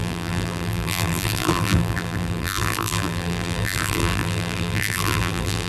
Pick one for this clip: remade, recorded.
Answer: remade